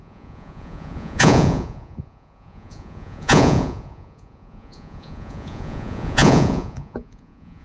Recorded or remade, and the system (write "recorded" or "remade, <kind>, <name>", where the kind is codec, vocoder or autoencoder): remade, vocoder, Vocos